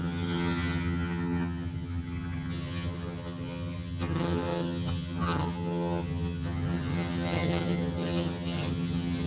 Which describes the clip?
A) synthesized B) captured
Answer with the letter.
A